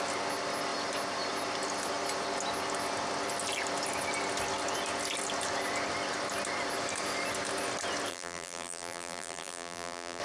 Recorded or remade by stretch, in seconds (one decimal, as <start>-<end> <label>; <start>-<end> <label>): 0.0-8.1 recorded; 8.1-10.2 remade